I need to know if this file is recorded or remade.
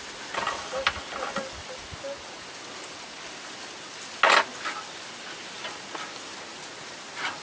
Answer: recorded